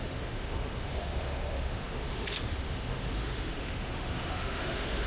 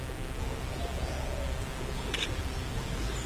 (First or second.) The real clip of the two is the second